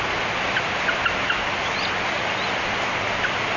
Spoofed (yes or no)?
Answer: no